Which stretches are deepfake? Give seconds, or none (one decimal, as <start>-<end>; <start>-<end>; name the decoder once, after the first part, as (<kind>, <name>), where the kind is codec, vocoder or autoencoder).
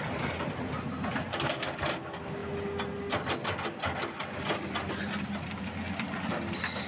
none